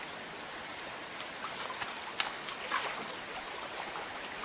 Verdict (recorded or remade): recorded